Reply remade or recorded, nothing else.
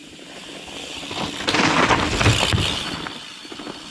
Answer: remade